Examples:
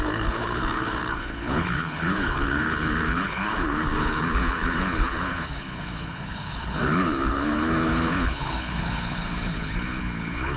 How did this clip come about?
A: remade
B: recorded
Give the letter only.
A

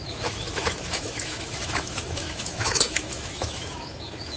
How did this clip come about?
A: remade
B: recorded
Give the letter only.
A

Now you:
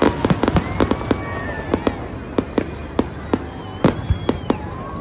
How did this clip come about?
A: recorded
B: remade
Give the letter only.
A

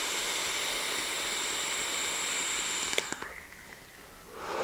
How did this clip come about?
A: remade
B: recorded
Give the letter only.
B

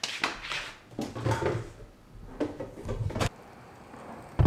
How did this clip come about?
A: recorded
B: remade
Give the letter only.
A